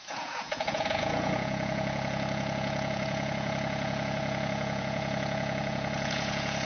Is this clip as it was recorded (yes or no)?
no